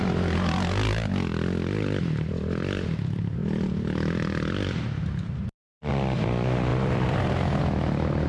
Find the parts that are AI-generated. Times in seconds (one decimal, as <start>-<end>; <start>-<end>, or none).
1.3-2.3; 3.4-5.9; 6.7-7.6